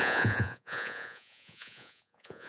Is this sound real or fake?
fake